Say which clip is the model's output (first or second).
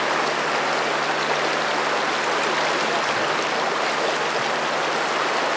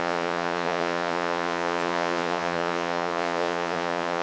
second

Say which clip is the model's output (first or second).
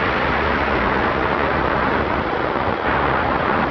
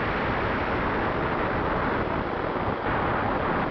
first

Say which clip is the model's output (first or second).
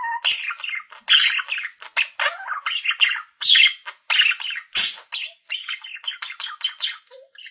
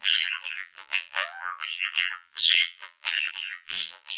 second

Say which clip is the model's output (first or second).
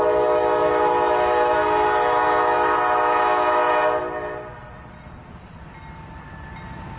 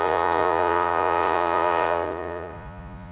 second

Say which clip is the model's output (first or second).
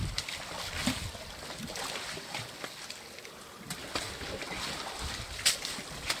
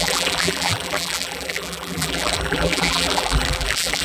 second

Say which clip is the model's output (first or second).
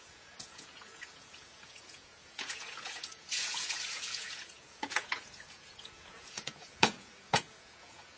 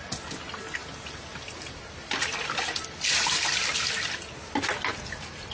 first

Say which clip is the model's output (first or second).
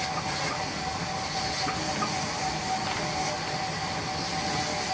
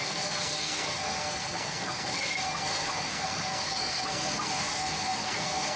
second